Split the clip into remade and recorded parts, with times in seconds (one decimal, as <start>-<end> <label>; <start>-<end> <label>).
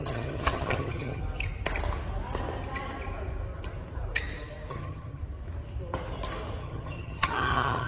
0.0-1.2 remade; 1.2-4.7 recorded; 4.7-5.2 remade; 5.2-6.6 recorded; 6.6-7.9 remade